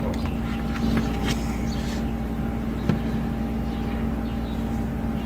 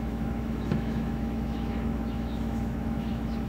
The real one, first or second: first